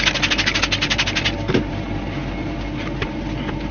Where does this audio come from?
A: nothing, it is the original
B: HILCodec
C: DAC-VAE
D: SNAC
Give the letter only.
A